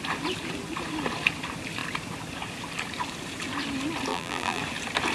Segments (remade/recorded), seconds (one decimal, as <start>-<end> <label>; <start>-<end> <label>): 0.0-4.1 recorded; 4.1-4.6 remade; 4.6-5.1 recorded